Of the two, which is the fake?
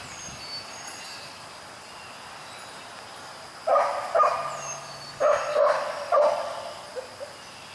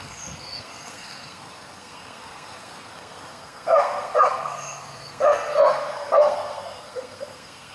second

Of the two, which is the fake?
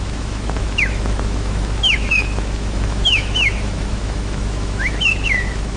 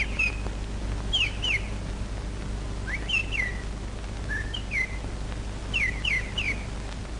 first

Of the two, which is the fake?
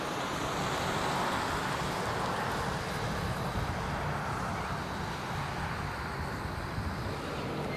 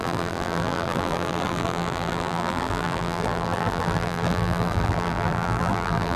second